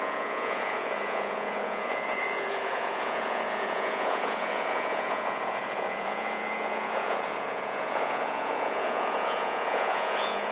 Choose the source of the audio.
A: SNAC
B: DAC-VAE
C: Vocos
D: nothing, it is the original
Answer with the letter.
C